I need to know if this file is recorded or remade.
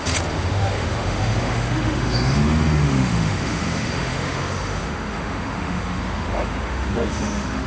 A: remade